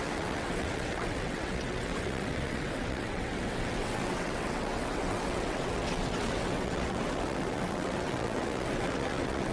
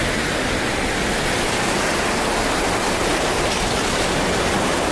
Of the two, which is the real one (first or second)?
second